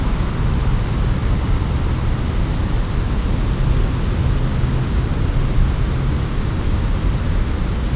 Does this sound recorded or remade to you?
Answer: recorded